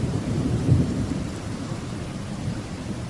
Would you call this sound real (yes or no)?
no